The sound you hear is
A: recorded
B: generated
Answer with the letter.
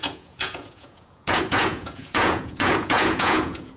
B